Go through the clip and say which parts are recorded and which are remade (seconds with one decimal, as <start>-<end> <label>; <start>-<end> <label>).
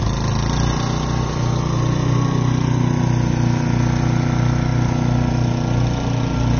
0.0-6.6 recorded